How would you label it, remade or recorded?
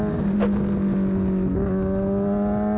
recorded